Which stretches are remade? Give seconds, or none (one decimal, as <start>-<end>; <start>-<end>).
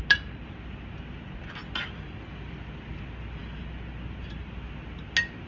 none